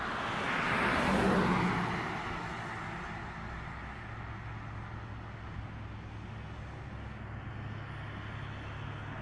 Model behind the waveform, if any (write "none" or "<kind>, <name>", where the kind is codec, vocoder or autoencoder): none